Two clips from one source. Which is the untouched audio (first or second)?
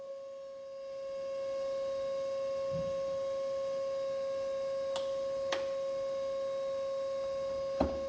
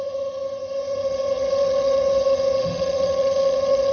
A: first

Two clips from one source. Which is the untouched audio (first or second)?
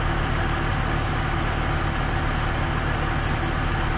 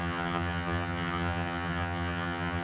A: first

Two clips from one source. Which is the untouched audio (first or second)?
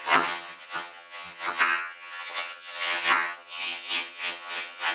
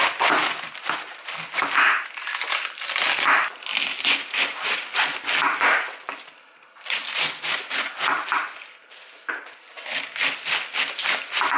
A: second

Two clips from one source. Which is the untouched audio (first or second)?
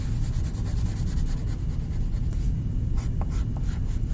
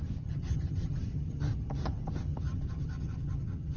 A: first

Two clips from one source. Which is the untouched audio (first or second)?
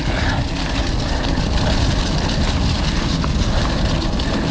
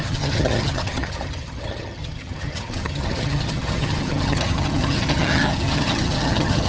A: first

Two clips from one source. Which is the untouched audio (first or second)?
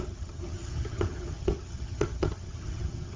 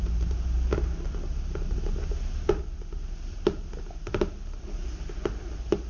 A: second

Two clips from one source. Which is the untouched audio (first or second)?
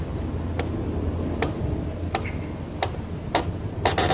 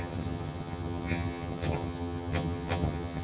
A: first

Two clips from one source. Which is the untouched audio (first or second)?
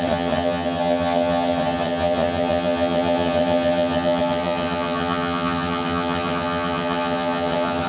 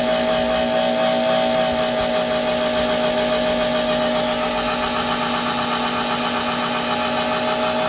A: second